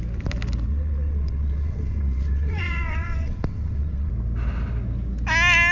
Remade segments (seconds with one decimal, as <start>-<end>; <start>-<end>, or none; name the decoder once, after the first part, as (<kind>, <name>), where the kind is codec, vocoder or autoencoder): 0.7-4.1 (vocoder, WaveNeXt)